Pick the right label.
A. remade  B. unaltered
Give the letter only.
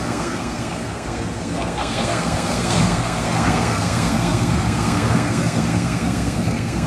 A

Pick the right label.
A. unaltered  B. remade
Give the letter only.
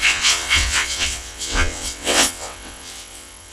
B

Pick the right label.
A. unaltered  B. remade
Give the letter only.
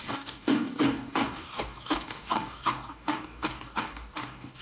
B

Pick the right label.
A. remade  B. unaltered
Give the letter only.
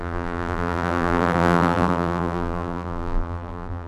A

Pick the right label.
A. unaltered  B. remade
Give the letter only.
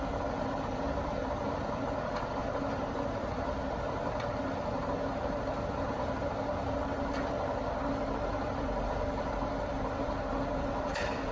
B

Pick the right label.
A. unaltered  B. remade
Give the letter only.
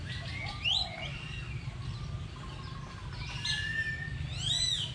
A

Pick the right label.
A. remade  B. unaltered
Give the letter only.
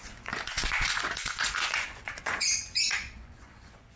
A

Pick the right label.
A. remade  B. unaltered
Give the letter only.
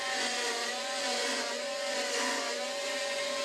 A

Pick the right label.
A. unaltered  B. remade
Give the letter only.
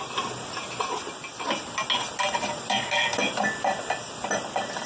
A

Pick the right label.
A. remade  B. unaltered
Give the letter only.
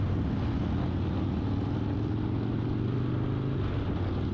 B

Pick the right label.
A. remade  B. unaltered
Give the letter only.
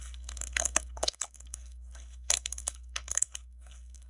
A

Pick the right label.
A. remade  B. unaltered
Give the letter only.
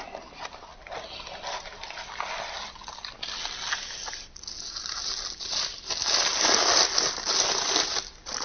B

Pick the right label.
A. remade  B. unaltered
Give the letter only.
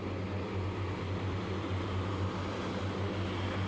B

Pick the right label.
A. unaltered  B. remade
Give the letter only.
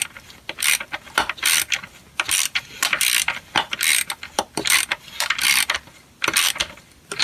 B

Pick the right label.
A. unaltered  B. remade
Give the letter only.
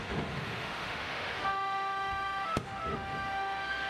B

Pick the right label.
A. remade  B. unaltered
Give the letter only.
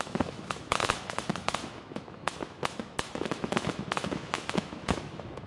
A